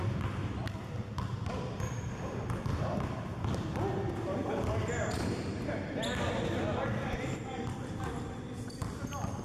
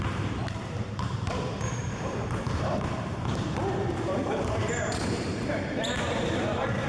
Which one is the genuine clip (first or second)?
first